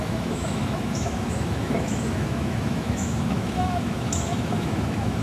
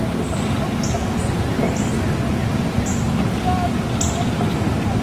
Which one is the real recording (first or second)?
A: second